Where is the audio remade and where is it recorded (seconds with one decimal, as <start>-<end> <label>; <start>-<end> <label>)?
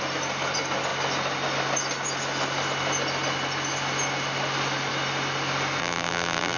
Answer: 0.0-5.8 recorded; 5.8-6.6 remade